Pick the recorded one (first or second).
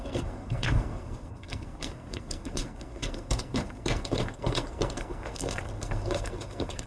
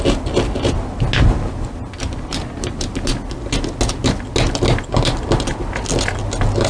second